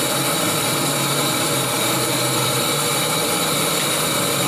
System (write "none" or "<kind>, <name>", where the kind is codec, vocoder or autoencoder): none